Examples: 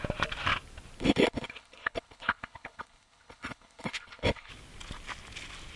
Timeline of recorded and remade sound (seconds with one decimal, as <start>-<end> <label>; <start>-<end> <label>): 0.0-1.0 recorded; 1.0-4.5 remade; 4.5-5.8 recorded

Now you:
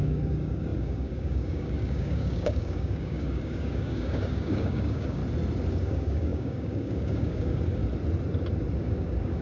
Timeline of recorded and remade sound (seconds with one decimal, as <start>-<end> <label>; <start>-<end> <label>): 0.0-5.2 remade; 5.2-5.7 recorded; 5.7-7.8 remade; 7.8-8.8 recorded; 8.8-9.4 remade

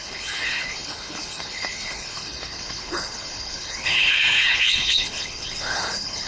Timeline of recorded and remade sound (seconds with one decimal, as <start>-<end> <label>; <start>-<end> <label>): 0.0-6.3 remade

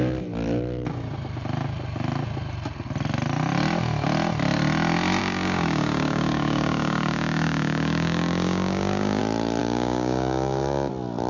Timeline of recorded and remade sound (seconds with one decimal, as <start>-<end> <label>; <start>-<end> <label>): 0.0-5.2 recorded; 5.2-9.2 remade; 9.2-9.6 recorded; 9.6-10.9 remade; 10.9-11.3 recorded

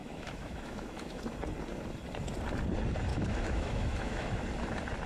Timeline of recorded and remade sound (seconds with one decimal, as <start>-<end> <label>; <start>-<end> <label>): 0.0-1.2 remade; 1.2-3.1 recorded; 3.1-4.4 remade; 4.4-5.1 recorded

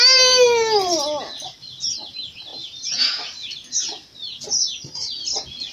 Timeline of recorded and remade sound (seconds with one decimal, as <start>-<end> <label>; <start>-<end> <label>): 0.0-2.5 recorded; 2.5-3.2 remade; 3.2-5.7 recorded

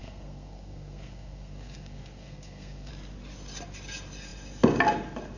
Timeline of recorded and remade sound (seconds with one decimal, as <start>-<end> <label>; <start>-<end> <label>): 0.0-2.9 remade; 2.9-5.4 recorded

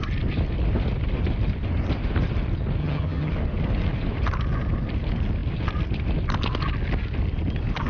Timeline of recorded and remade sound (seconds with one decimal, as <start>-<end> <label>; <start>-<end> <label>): 0.0-2.8 recorded; 2.8-3.3 remade; 3.3-7.9 recorded